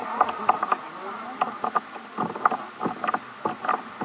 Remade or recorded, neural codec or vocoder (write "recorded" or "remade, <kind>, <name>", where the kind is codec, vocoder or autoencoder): recorded